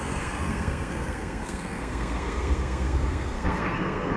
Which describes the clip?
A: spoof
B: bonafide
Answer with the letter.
A